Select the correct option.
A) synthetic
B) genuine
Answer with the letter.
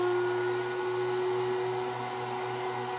B